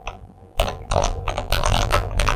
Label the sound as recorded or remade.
remade